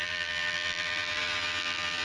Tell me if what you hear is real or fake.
fake